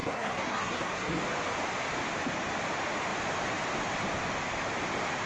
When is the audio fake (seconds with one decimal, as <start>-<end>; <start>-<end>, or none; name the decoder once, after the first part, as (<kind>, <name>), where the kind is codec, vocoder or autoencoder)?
0.0-1.2 (codec, SNAC)